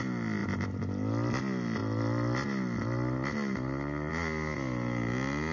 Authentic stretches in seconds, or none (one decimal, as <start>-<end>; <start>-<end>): 0.0-5.5